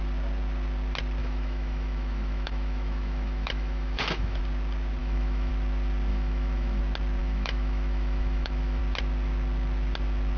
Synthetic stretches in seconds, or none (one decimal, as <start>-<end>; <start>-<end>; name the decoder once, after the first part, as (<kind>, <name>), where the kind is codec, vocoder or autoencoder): 1.2-4.4 (autoencoder, DAC-VAE); 5.0-5.5; 6.1-6.8; 7.2-8.8